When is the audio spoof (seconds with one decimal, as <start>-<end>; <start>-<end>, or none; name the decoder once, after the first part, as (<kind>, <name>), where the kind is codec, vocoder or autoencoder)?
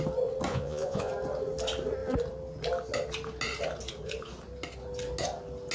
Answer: 0.5-1.1 (vocoder, Vocos)